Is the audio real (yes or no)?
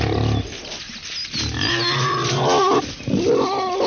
yes